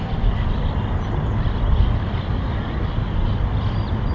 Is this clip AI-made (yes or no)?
no